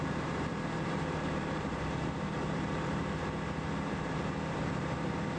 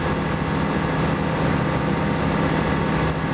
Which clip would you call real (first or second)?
second